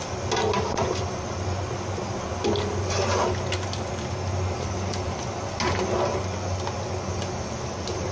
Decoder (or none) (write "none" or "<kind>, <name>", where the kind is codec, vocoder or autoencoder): none